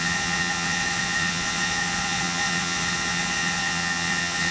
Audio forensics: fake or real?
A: fake